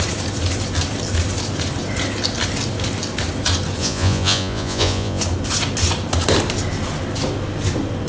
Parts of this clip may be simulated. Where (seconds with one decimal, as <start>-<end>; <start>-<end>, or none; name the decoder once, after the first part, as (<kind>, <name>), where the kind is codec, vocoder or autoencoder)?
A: 3.8-5.2 (vocoder, Vocos)

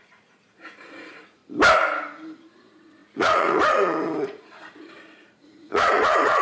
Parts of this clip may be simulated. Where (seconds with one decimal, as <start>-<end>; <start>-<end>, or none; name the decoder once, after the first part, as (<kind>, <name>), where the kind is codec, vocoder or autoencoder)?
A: 0.0-1.4 (vocoder, Vocos); 2.5-6.4

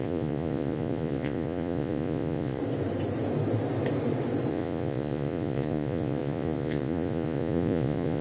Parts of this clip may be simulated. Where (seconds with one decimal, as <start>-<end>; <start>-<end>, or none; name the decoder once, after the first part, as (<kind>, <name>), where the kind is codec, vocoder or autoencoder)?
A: 0.0-2.6 (vocoder, Vocos); 4.5-8.2

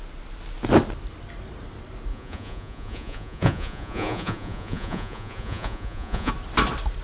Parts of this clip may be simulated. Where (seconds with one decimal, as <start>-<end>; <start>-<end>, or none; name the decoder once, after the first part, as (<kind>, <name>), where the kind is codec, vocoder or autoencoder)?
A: 2.1-6.3 (vocoder, Vocos)

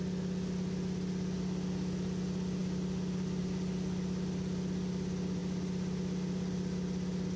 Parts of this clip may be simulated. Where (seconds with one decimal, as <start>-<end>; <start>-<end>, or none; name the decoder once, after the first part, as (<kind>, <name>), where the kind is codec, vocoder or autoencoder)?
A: none

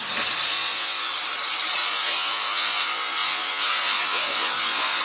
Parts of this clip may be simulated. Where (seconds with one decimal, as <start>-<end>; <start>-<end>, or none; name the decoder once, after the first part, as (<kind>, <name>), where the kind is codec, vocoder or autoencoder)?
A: 0.5-1.1 (vocoder, Vocos); 1.8-5.0

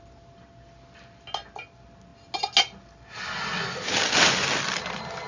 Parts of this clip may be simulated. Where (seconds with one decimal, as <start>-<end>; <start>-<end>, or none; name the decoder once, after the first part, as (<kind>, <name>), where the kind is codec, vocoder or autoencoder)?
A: none

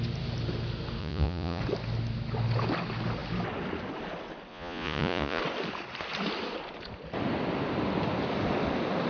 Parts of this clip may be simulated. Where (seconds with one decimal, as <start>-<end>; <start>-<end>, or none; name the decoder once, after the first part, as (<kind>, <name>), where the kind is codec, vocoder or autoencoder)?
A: 1.0-1.6 (vocoder, Vocos); 4.5-5.4